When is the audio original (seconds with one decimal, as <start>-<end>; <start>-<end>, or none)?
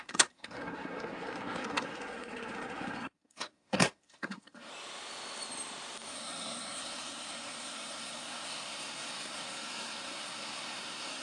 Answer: 4.7-6.1